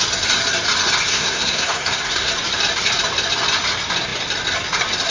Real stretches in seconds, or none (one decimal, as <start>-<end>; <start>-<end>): 0.0-1.1; 2.3-5.1